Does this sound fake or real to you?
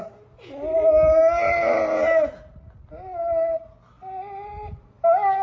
real